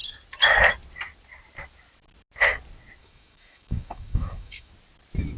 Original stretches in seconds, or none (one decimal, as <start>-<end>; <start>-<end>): 0.0-3.0; 4.7-5.4